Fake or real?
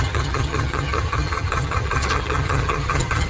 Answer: fake